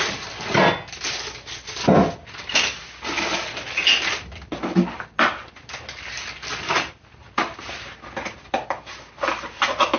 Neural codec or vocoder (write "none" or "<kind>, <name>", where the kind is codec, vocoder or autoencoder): none